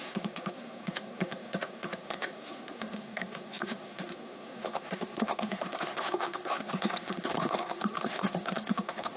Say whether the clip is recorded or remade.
remade